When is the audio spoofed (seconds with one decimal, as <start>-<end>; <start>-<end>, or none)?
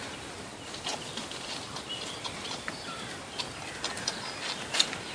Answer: none